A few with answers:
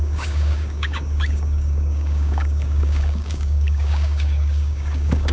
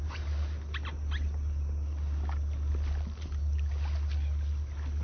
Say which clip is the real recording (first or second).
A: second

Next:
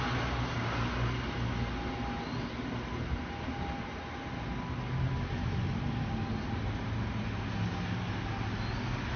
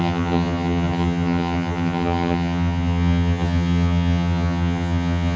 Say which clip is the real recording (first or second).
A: first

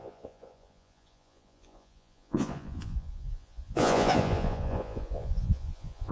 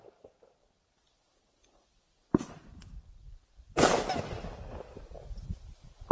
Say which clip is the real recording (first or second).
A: second